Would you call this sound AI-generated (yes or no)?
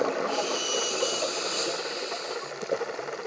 no